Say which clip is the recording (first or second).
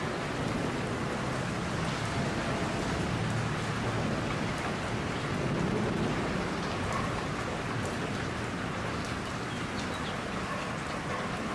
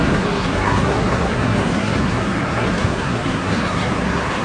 first